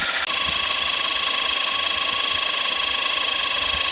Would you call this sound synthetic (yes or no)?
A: no